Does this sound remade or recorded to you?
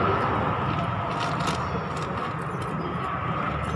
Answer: recorded